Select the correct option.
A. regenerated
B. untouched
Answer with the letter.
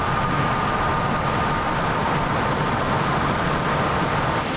B